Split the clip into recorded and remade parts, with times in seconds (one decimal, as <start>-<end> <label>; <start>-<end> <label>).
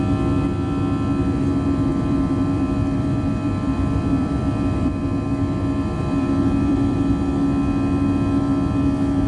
0.0-1.9 recorded; 1.9-7.1 remade; 7.1-9.3 recorded